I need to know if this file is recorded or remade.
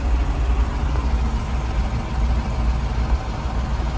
recorded